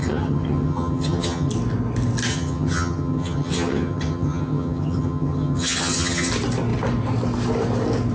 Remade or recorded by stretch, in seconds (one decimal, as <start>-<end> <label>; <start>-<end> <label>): 0.0-1.5 remade; 1.5-2.3 recorded; 2.3-6.3 remade; 6.3-8.1 recorded